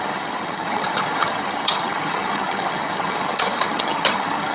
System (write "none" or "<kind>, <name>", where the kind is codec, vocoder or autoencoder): vocoder, HiFi-GAN